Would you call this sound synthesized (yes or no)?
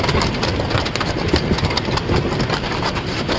no